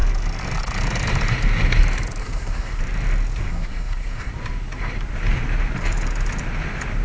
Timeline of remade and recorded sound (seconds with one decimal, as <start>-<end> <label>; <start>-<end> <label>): 0.0-2.2 recorded; 2.2-2.8 remade; 2.8-3.5 recorded; 3.5-4.3 remade; 4.3-7.0 recorded